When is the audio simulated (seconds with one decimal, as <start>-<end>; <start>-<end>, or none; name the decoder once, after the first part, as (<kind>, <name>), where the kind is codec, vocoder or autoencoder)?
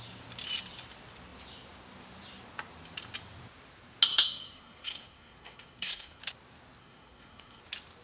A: 4.1-6.2 (codec, SNAC); 6.8-7.6